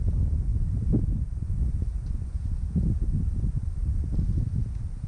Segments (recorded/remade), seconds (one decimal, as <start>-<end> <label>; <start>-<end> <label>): 0.0-5.1 recorded